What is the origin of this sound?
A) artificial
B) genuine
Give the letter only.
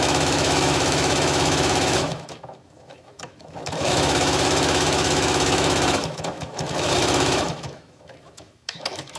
A